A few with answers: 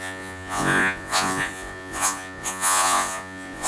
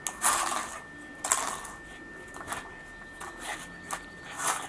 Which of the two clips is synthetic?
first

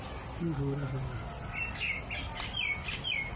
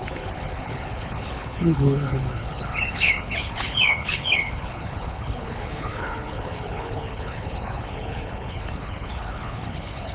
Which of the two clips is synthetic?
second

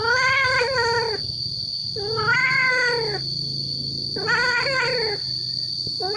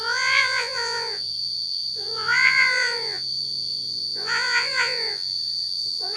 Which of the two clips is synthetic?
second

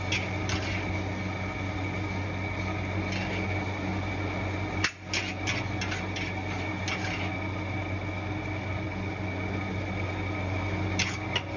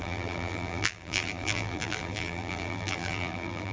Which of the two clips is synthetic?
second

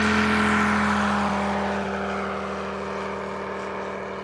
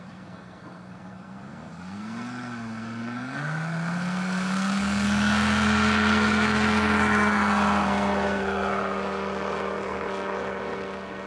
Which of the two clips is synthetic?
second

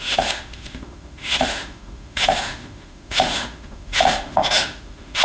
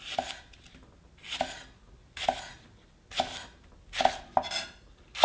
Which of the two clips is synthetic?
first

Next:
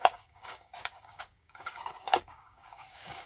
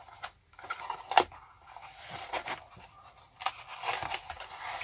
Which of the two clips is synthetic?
first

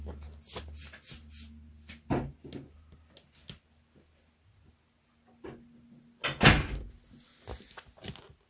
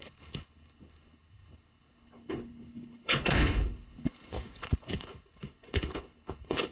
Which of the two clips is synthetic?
second